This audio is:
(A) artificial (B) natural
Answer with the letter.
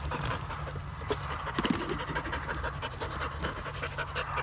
B